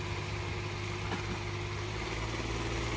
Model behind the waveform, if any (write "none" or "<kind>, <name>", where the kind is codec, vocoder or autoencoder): none